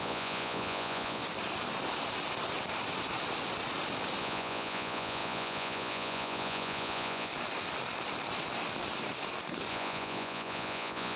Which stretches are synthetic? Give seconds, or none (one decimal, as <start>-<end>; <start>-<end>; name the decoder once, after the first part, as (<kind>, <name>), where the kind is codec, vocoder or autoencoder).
0.0-1.2 (vocoder, Vocos); 4.2-7.3; 9.7-11.2